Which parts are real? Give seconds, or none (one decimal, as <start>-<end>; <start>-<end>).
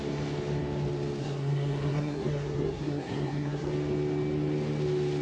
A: 0.0-1.2; 3.7-5.2